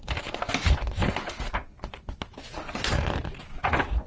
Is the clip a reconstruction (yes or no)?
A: no